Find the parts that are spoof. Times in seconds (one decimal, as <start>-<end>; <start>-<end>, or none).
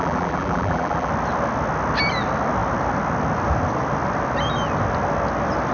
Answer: 0.0-1.1